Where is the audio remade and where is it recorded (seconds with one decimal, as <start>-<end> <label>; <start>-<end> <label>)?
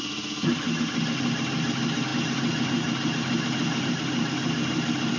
0.0-5.2 recorded